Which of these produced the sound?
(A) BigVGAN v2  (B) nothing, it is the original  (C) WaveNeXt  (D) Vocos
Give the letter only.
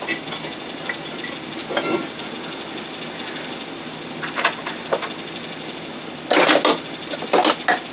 B